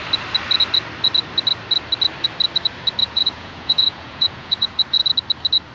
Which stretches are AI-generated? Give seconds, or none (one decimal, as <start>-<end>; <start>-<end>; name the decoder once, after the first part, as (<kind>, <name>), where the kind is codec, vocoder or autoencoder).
3.0-4.7 (vocoder, Vocos)